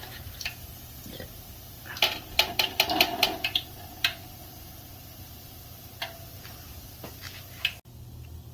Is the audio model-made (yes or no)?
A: no